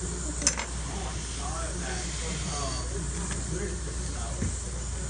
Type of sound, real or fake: real